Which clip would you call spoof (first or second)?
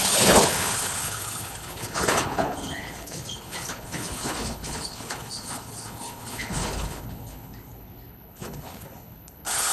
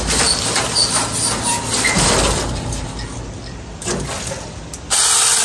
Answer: first